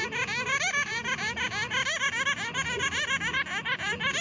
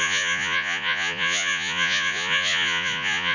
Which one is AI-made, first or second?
second